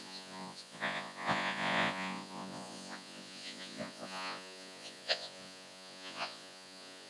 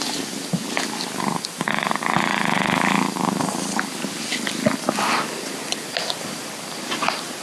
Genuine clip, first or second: second